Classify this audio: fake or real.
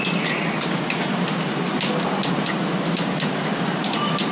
real